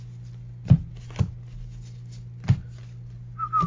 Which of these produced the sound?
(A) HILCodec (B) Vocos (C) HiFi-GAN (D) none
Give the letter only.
D